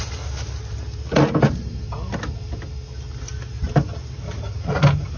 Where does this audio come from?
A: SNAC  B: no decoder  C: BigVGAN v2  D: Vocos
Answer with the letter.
B